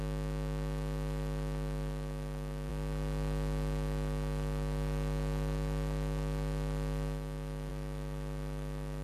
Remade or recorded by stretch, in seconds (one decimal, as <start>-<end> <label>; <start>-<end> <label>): 0.0-9.0 recorded